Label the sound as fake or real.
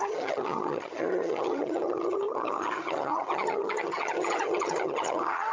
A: fake